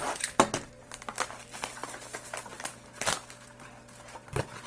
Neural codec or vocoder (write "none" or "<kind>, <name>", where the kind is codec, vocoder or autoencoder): none